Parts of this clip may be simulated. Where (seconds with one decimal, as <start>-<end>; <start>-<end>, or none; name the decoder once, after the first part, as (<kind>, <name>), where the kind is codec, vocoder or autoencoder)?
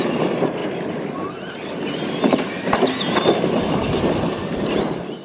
none